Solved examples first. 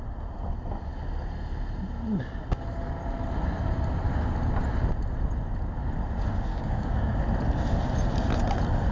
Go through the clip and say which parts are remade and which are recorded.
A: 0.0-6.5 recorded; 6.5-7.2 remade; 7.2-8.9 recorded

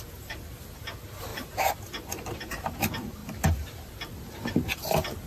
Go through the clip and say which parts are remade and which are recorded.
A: 0.0-5.3 recorded

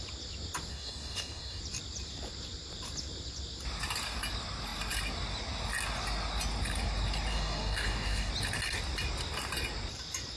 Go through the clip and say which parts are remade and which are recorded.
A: 0.0-0.7 recorded; 0.7-1.6 remade; 1.6-7.3 recorded; 7.3-8.3 remade; 8.3-10.4 recorded

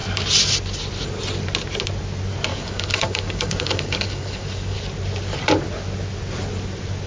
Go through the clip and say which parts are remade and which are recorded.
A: 0.0-2.5 recorded; 2.5-4.8 remade; 4.8-7.1 recorded

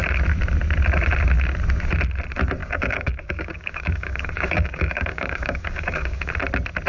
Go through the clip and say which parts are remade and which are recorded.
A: 0.0-2.6 recorded; 2.6-6.3 remade; 6.3-6.9 recorded

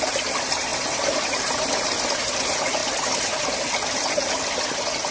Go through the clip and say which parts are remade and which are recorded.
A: 0.0-5.1 recorded